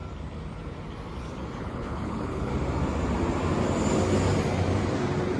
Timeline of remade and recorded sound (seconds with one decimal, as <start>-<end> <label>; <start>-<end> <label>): 0.0-1.6 recorded; 1.6-2.5 remade; 2.5-5.4 recorded